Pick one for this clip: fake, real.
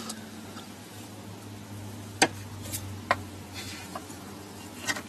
real